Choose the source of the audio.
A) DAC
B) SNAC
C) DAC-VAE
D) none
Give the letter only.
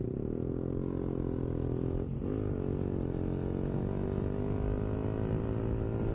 D